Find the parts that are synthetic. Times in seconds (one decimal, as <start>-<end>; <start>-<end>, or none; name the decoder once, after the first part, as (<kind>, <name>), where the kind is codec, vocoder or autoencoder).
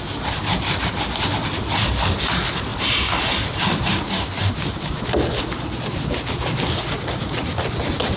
none